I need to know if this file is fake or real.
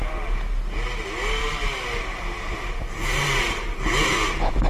real